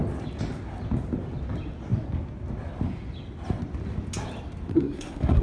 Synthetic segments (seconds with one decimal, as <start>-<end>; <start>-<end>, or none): 4.7-5.4

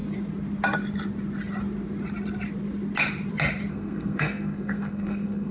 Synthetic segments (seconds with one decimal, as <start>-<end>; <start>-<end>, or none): 3.7-5.5

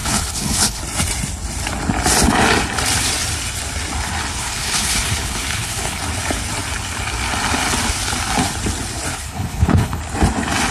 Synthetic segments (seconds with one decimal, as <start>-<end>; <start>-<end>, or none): 0.0-0.8; 4.4-6.0; 9.1-10.0

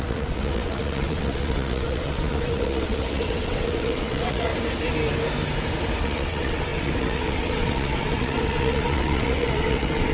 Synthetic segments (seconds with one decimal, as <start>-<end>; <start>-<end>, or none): 0.0-4.5; 6.0-10.1

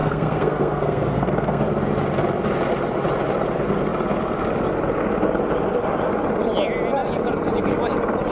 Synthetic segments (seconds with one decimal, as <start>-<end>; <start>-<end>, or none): 0.0-1.6

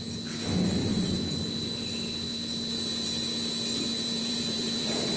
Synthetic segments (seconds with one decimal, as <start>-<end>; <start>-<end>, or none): 0.8-1.5; 4.2-5.2